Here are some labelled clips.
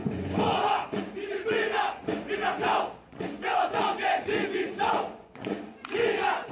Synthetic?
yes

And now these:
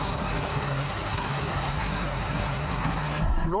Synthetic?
yes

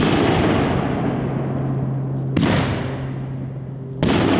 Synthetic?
no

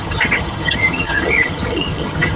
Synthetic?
yes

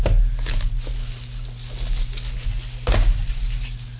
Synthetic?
no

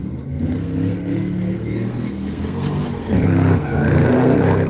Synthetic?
yes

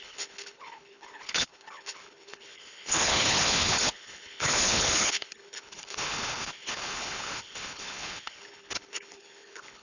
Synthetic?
yes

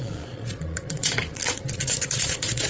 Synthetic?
yes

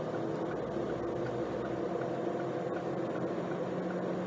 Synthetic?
no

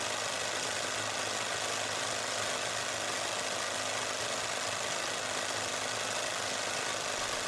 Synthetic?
no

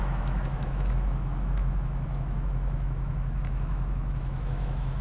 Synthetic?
yes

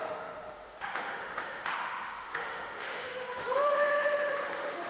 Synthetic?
yes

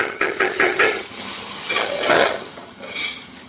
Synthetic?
yes